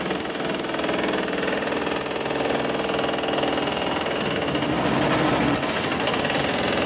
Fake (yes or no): no